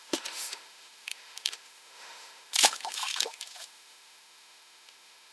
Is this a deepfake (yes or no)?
yes